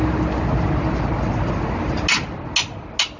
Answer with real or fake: real